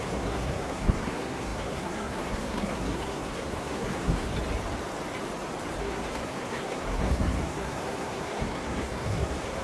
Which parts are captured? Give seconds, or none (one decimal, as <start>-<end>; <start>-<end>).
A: 4.3-5.8